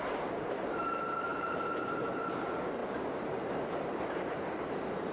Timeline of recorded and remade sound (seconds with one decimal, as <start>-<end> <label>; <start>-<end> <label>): 0.0-5.1 remade